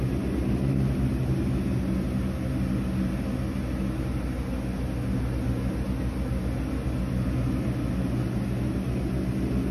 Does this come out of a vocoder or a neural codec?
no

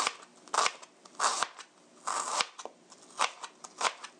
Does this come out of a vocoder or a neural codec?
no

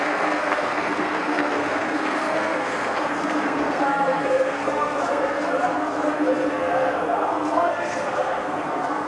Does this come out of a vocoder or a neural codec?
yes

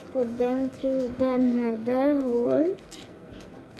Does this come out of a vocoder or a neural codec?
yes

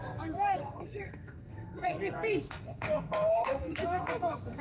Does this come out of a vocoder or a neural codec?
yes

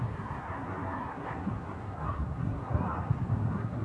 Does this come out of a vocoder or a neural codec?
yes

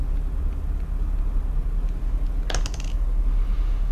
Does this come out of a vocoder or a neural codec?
no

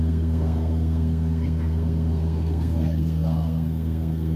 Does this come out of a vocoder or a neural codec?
yes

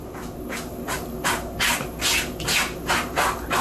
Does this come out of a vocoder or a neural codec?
no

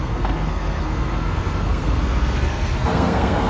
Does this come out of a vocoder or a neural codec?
yes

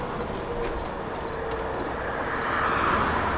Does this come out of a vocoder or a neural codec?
no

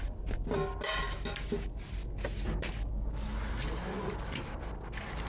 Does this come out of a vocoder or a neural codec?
no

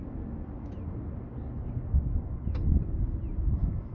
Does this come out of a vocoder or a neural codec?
no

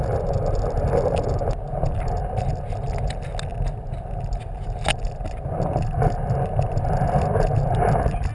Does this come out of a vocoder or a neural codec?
no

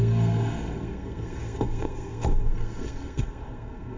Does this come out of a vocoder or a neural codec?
yes